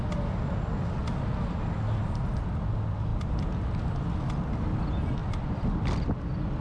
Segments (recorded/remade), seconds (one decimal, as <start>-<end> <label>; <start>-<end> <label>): 0.0-3.1 recorded; 3.1-3.8 remade; 3.8-5.2 recorded; 5.2-6.6 remade